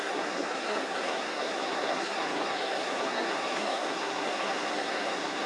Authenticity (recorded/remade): remade